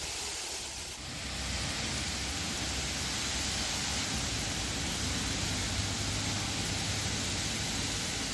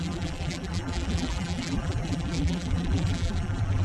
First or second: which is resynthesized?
second